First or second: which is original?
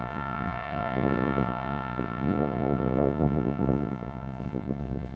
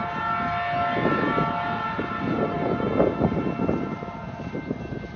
second